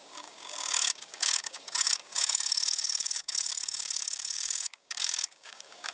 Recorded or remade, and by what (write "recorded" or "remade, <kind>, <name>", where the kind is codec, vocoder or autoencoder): remade, codec, DAC